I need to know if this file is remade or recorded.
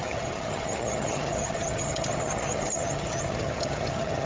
remade